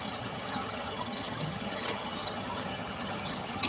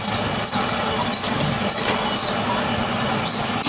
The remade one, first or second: first